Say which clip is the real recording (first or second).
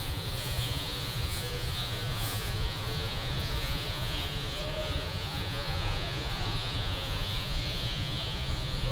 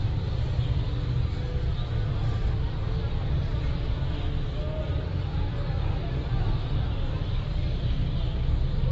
second